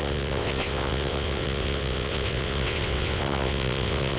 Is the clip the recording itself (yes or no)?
no